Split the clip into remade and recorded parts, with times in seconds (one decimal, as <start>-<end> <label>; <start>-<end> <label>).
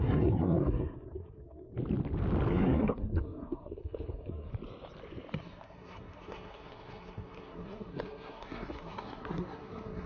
0.0-1.7 remade; 1.7-2.5 recorded; 2.5-4.5 remade; 4.5-5.4 recorded; 5.4-10.1 remade